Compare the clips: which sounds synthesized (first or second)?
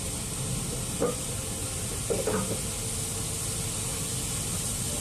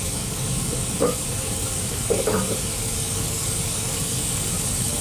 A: second